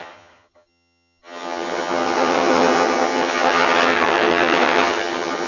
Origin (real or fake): fake